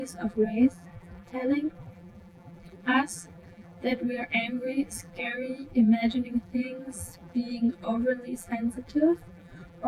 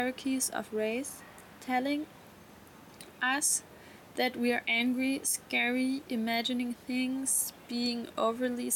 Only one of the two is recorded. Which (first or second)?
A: second